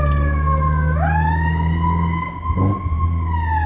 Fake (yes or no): no